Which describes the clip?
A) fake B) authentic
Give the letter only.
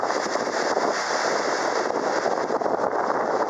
B